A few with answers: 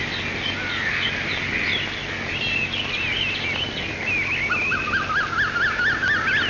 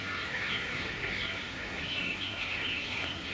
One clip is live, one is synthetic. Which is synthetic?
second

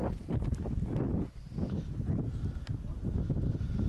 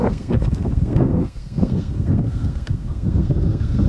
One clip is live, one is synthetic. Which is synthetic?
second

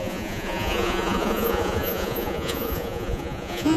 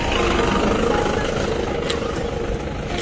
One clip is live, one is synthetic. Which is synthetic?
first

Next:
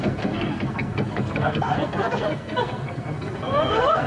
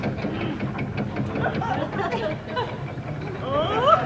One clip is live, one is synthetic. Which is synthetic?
first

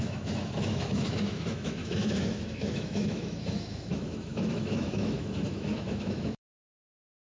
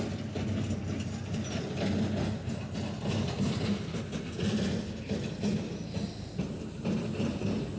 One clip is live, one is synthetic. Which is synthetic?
first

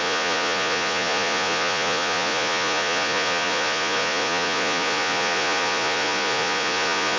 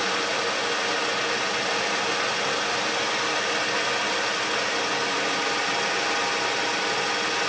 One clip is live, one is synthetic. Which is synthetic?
first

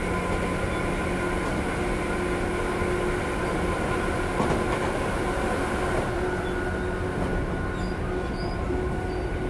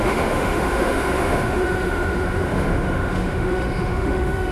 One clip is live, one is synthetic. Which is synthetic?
second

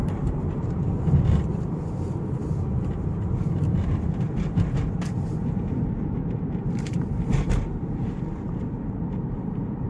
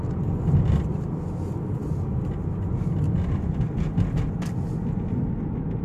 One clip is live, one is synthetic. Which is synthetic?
first